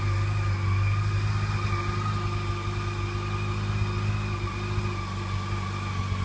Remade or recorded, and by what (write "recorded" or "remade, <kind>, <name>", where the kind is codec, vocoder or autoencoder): recorded